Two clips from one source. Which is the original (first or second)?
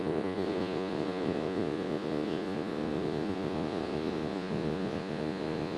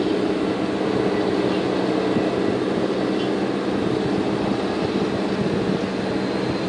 second